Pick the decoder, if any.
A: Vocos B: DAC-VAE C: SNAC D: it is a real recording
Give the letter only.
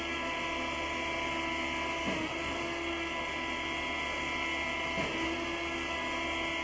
D